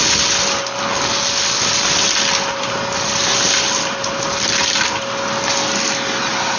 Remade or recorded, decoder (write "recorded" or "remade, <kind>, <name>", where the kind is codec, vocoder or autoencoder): recorded